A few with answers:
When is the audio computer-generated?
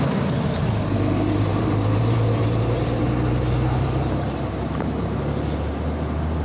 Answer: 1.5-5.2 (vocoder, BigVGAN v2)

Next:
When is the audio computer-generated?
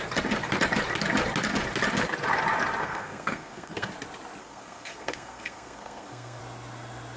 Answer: 2.8-3.9 (codec, SNAC); 4.4-6.4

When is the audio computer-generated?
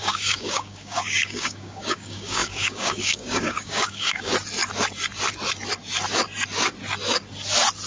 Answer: 0.0-4.3 (codec, DAC)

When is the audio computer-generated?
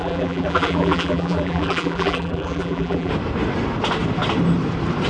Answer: 0.0-3.1 (vocoder, BigVGAN v2)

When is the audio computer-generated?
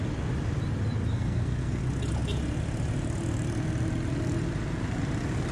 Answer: 1.1-1.8 (codec, SNAC)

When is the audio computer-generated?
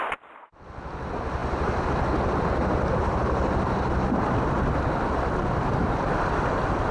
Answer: none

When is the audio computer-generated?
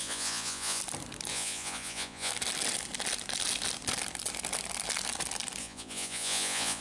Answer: 0.0-0.8 (vocoder, Vocos); 1.3-2.3; 5.6-6.8